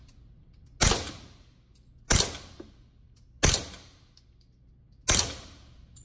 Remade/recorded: recorded